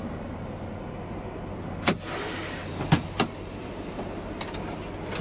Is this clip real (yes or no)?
yes